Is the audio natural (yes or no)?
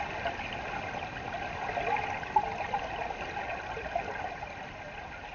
yes